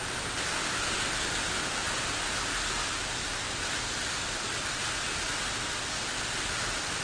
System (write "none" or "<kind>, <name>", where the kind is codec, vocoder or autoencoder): none